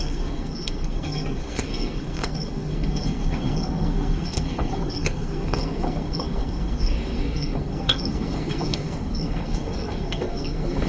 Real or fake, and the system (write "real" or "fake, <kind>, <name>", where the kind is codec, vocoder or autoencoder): fake, codec, SNAC